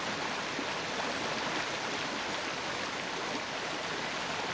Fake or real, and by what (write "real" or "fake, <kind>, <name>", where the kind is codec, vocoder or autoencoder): real